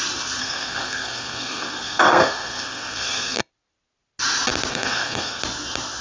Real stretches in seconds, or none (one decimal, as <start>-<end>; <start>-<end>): 0.0-0.4; 3.5-4.7; 5.4-6.0